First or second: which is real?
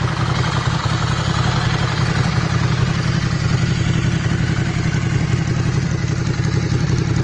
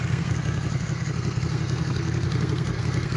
first